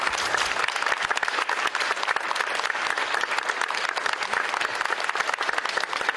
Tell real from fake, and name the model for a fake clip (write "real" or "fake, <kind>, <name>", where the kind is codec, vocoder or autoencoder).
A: real